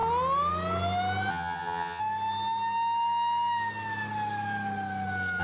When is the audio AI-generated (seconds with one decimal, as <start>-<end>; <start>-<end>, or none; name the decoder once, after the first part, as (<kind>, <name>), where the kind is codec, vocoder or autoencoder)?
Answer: 1.3-2.0 (vocoder, HiFi-GAN)